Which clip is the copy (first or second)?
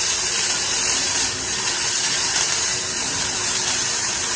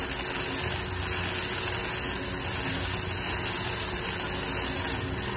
first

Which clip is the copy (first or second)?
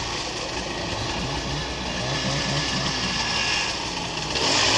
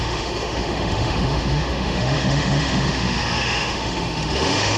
second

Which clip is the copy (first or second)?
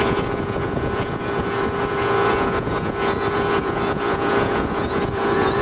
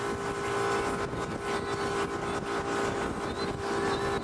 first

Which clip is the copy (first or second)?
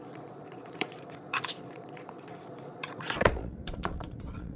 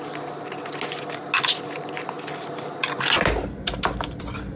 first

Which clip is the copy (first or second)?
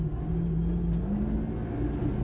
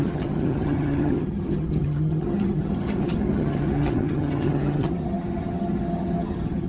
second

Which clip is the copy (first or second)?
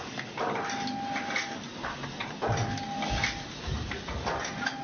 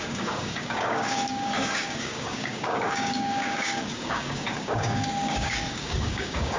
second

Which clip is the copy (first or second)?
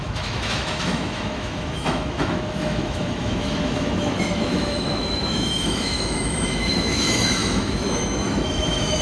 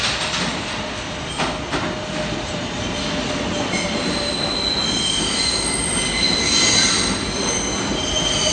first